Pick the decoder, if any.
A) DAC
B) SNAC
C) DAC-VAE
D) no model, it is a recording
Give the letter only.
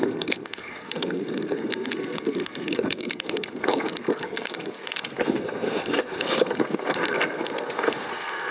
B